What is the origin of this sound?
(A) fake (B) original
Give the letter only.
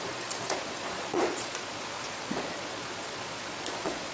A